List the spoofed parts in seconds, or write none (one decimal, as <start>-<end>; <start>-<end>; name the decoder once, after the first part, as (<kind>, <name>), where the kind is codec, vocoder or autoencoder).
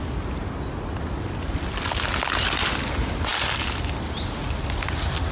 none